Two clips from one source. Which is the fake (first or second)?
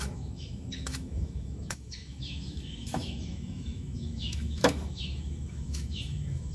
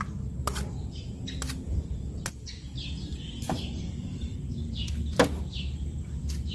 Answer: first